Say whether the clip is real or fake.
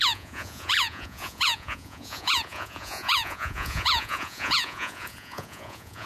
fake